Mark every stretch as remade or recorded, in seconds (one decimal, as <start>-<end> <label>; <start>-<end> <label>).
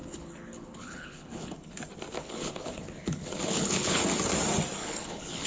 0.0-1.8 remade; 1.8-2.2 recorded; 2.2-4.0 remade; 4.0-4.8 recorded; 4.8-5.5 remade